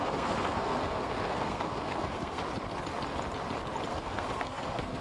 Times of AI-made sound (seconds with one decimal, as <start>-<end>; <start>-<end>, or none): 0.0-2.4; 3.9-5.0